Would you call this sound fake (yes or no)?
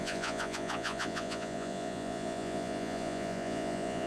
yes